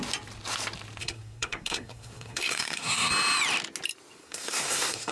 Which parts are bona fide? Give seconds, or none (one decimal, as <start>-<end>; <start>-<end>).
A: 0.0-1.0; 3.1-4.2